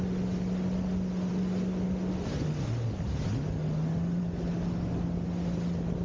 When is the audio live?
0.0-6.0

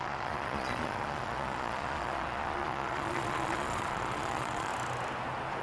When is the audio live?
4.7-5.6